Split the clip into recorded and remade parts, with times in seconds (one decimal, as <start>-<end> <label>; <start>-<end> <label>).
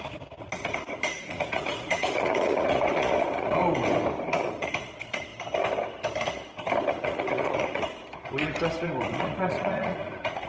0.0-3.6 remade; 3.6-4.3 recorded; 4.3-5.3 remade; 5.3-6.9 recorded; 6.9-8.0 remade; 8.0-9.0 recorded; 9.0-10.5 remade